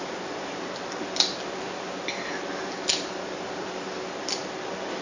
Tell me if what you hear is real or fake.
real